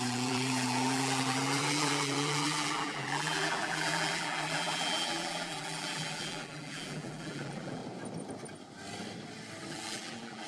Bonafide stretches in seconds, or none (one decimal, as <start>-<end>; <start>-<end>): 7.8-9.7